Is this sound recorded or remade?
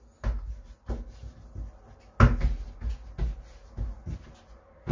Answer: recorded